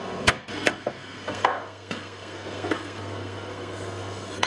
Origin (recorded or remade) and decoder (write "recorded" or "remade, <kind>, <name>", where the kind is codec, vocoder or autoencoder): remade, codec, SNAC